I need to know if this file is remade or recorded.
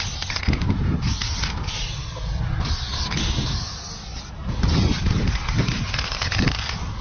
recorded